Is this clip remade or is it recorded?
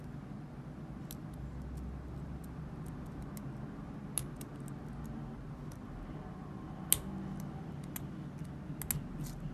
recorded